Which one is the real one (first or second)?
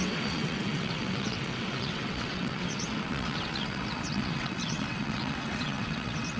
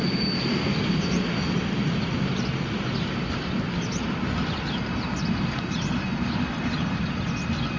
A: second